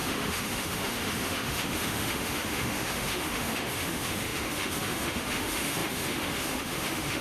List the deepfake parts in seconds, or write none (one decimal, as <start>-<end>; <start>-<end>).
0.0-7.2